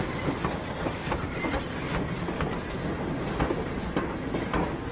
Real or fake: real